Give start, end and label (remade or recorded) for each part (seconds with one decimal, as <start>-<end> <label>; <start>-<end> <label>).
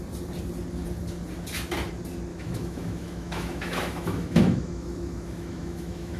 0.0-2.3 recorded; 2.3-6.2 remade